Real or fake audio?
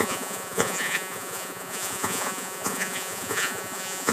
fake